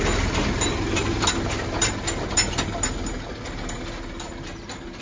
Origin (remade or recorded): recorded